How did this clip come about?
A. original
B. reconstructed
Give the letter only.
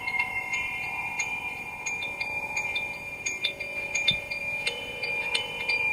B